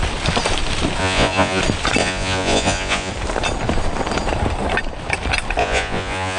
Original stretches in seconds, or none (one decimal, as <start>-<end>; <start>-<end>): 0.0-1.0; 1.6-2.0; 3.1-5.6